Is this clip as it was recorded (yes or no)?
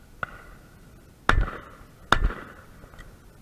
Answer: yes